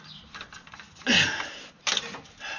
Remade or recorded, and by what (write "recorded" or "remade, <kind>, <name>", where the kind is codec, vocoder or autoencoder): recorded